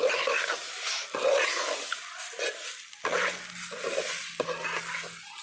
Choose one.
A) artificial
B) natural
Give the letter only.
B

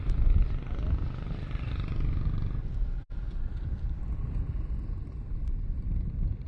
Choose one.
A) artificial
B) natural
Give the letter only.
B